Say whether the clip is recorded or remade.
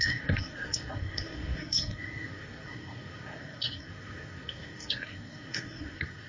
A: remade